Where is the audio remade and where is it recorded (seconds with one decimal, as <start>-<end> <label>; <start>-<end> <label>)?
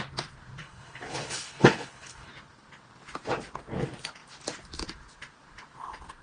0.0-0.6 recorded; 0.6-2.3 remade; 2.3-6.2 recorded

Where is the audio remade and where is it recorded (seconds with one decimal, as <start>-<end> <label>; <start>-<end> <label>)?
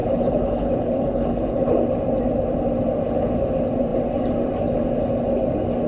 0.0-1.7 remade; 1.7-5.9 recorded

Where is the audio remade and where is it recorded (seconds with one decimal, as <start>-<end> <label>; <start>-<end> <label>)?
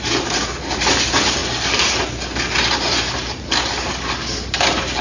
0.0-5.0 recorded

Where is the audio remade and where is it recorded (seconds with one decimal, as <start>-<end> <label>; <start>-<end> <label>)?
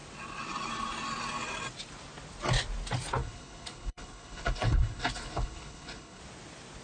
0.0-3.2 recorded; 3.2-6.2 remade; 6.2-6.8 recorded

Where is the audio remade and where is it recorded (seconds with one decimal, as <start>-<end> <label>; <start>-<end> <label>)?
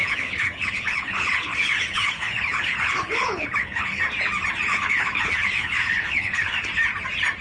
0.0-4.0 remade; 4.0-4.7 recorded; 4.7-6.7 remade; 6.7-7.4 recorded